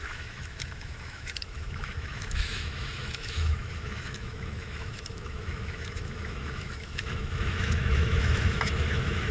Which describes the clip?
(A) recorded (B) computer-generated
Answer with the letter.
B